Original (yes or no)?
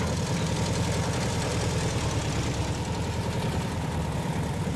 no